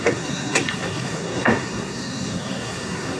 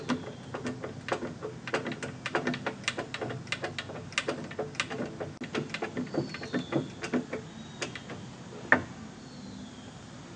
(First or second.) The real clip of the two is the second